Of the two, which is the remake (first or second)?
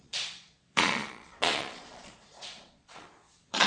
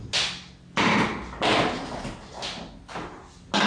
first